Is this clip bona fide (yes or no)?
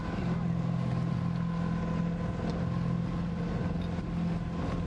yes